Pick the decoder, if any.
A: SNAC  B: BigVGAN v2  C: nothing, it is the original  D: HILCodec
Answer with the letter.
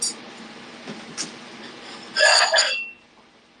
C